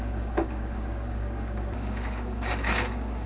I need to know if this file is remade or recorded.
remade